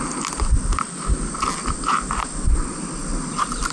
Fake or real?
real